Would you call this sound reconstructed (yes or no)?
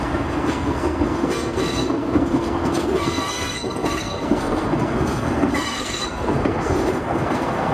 yes